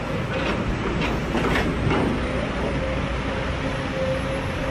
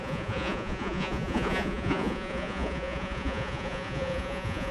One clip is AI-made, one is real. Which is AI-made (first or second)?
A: second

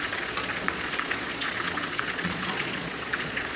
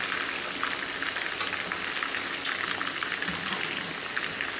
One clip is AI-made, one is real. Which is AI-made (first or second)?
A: first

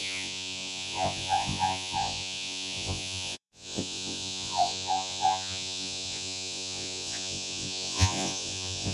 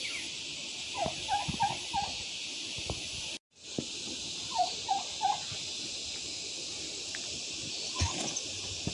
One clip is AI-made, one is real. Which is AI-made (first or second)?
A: first